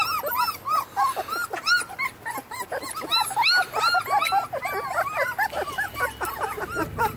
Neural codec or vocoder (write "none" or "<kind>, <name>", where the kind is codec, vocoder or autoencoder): none